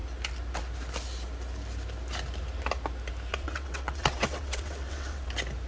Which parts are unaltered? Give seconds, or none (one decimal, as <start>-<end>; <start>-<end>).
0.0-3.3; 5.3-5.7